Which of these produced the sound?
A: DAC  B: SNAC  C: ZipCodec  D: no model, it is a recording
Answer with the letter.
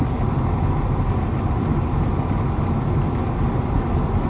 D